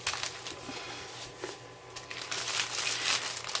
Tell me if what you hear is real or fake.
real